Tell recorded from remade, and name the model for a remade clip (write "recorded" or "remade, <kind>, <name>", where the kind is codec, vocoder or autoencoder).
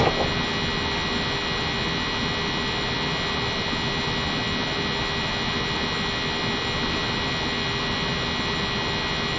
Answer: recorded